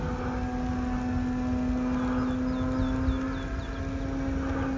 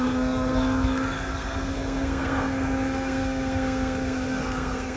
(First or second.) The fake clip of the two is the second